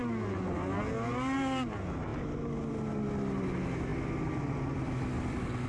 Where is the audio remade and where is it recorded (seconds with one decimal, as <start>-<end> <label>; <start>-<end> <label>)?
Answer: 0.0-5.7 recorded